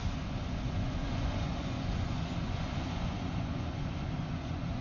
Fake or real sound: fake